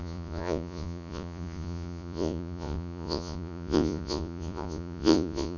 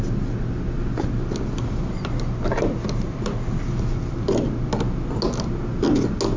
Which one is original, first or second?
second